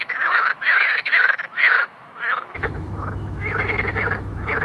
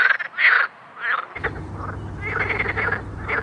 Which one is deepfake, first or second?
first